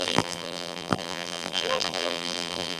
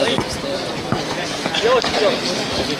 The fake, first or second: first